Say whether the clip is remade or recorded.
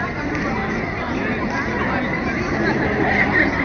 recorded